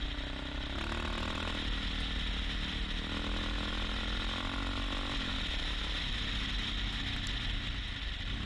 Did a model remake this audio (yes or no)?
no